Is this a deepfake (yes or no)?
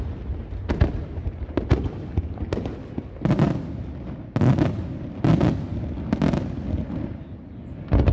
no